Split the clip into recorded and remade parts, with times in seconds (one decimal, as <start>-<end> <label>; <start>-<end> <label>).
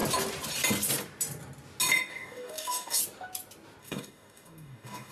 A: 0.0-2.1 recorded; 2.1-3.0 remade; 3.0-3.8 recorded; 3.8-5.1 remade